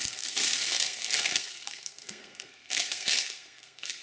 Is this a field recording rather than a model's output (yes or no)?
no